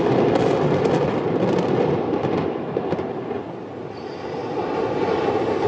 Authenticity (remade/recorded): recorded